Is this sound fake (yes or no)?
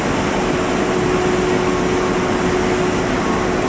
no